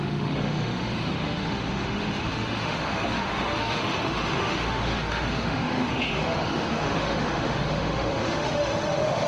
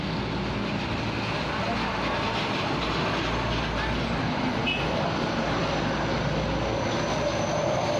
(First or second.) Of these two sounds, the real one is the second